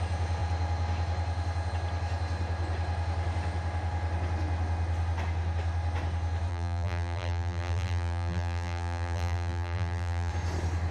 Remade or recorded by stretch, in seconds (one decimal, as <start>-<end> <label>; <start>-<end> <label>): 0.0-6.5 recorded; 6.5-10.3 remade; 10.3-10.9 recorded